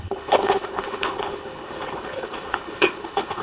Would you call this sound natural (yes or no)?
no